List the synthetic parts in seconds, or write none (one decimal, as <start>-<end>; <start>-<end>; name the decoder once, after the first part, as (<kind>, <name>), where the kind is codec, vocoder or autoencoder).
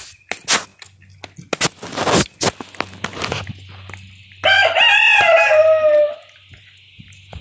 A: none